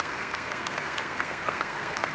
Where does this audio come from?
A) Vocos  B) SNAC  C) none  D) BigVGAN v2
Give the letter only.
B